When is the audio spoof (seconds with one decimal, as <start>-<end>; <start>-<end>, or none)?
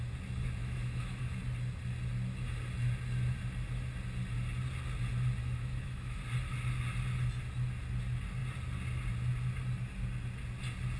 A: 0.6-1.2; 5.4-6.2